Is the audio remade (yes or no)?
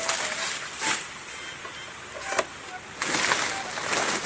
no